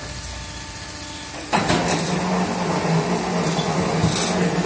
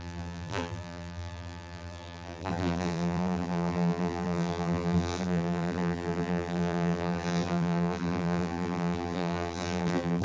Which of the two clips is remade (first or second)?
second